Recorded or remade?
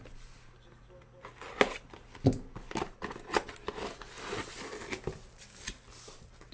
recorded